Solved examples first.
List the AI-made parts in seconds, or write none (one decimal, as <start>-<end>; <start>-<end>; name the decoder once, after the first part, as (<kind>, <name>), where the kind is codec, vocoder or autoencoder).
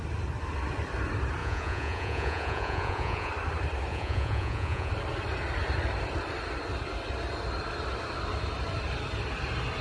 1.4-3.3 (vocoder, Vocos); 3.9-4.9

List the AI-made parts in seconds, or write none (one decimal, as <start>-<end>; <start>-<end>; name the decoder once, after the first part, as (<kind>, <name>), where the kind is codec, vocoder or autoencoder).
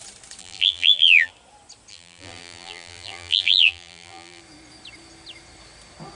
0.4-1.3 (vocoder, BigVGAN v2); 1.9-4.4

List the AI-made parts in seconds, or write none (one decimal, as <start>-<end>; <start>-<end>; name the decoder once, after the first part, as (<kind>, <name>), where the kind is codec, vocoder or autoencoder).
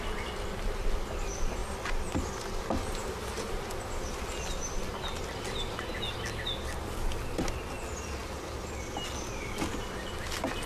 none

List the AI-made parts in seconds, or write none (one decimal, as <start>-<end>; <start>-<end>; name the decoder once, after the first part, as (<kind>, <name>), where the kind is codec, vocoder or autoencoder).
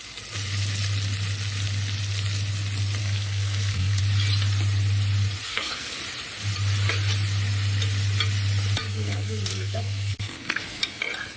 3.0-4.0 (codec, SNAC); 5.5-6.0; 8.8-11.0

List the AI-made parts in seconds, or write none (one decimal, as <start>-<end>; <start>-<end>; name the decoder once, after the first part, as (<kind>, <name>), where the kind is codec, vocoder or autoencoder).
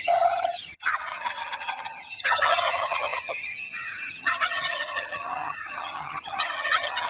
0.0-7.1 (vocoder, HiFi-GAN)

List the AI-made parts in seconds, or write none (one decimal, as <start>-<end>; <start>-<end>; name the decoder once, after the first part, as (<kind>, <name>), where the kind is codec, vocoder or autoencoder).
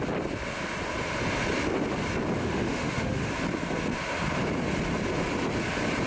2.4-3.3 (autoencoder, DAC-VAE)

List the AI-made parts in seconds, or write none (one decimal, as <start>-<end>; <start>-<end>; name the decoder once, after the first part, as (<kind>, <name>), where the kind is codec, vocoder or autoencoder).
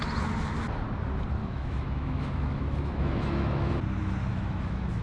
1.4-3.7 (autoencoder, DAC-VAE); 4.3-5.0